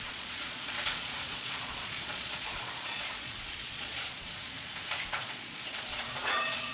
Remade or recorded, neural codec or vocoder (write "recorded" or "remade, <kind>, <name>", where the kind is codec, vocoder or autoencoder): remade, vocoder, Vocos